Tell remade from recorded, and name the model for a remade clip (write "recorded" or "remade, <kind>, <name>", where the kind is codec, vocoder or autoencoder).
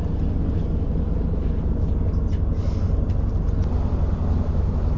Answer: recorded